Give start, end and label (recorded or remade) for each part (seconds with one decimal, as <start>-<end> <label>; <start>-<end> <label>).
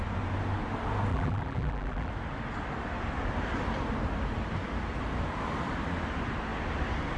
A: 0.0-1.1 recorded; 1.1-2.1 remade; 2.1-7.2 recorded